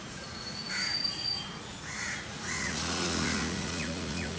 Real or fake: fake